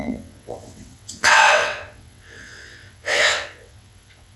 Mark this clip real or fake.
fake